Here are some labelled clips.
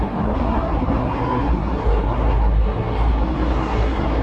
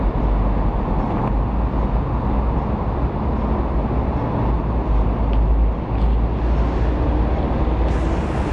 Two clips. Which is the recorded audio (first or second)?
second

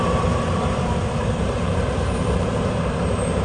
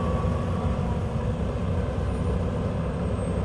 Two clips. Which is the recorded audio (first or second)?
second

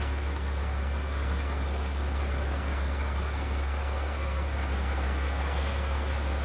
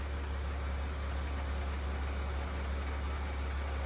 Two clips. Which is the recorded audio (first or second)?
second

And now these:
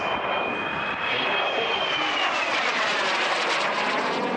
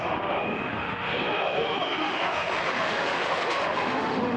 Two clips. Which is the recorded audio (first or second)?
first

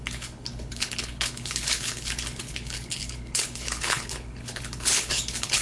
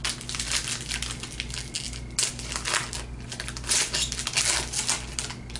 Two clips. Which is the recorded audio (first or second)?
second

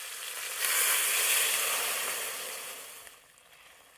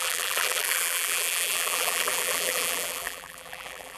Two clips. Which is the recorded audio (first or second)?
first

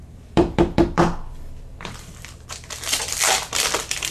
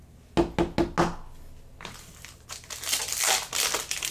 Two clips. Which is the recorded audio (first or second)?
second